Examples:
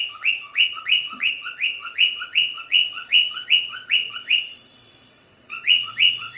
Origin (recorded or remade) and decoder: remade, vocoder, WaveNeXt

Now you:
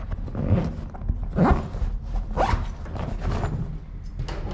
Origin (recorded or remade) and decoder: recorded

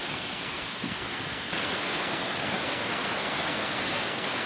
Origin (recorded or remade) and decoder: remade, codec, SNAC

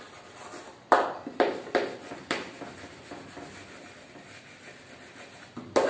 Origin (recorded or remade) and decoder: recorded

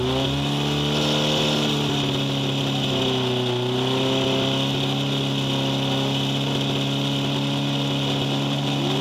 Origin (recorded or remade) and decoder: recorded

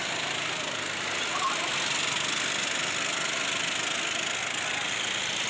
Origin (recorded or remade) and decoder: recorded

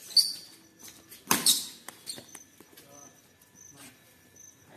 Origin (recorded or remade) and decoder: recorded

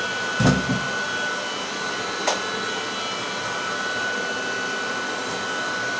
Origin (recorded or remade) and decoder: recorded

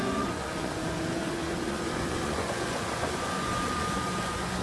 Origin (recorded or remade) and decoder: remade, vocoder, Vocos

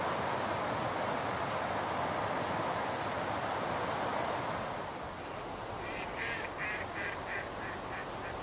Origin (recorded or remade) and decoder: recorded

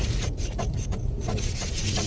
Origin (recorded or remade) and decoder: remade, vocoder, Vocos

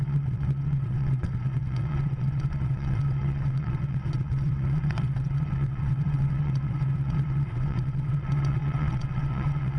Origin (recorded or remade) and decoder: remade, vocoder, WaveNeXt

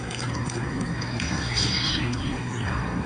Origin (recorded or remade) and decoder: remade, codec, SNAC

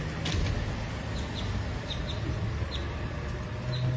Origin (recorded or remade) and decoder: recorded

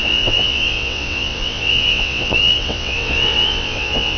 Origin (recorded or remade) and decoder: remade, vocoder, WaveNeXt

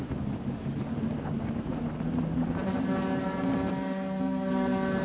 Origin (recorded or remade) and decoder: recorded